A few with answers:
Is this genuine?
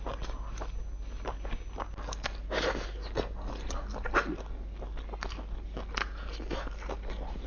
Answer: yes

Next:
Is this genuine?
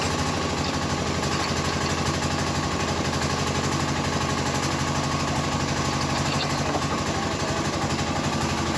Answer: yes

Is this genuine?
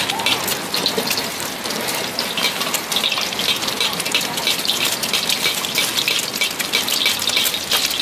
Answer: yes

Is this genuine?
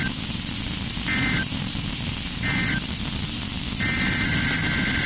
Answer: yes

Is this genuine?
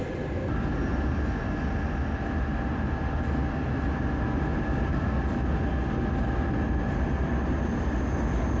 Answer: yes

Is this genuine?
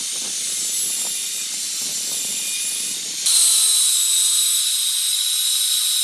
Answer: yes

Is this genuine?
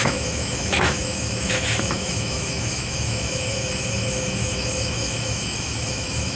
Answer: no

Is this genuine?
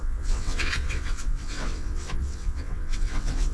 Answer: no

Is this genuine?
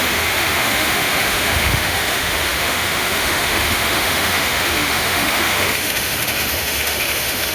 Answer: no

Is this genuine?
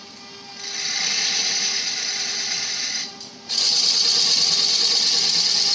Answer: yes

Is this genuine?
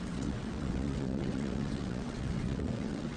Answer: no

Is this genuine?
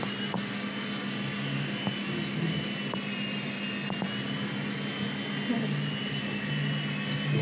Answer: yes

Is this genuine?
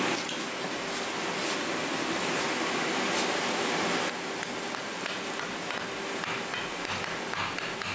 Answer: yes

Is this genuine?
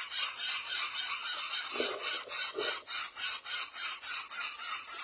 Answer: yes